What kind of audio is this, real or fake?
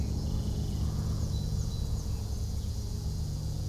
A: fake